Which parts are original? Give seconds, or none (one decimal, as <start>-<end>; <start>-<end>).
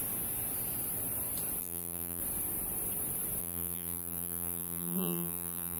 0.0-1.6; 2.2-3.4